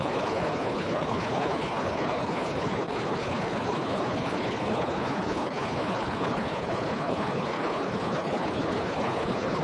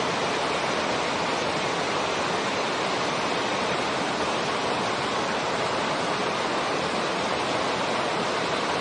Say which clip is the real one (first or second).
second